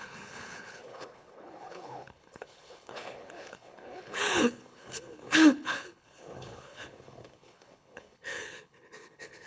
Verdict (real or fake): fake